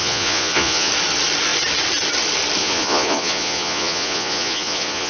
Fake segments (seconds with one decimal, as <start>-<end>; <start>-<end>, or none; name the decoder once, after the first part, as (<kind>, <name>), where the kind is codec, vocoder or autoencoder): 0.0-0.9 (vocoder, Vocos); 2.6-5.1